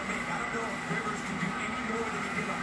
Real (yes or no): yes